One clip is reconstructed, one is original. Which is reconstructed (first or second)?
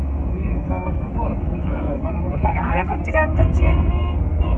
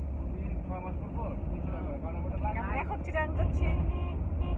first